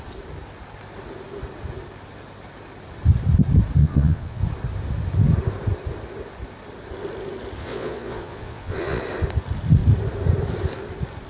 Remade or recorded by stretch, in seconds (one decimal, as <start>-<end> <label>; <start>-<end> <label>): 0.0-3.8 recorded; 3.8-4.4 remade; 4.4-7.6 recorded; 7.6-9.0 remade; 9.0-11.3 recorded